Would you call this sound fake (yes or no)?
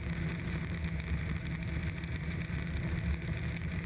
no